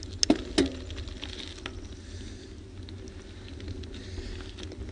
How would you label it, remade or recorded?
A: recorded